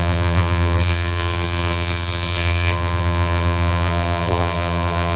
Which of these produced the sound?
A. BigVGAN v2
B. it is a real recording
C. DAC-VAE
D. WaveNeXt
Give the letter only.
A